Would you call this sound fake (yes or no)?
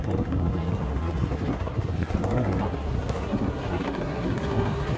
yes